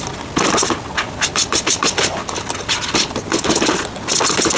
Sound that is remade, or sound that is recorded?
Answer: recorded